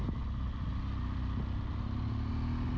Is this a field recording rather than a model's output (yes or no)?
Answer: yes